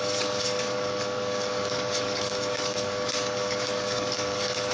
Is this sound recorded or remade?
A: remade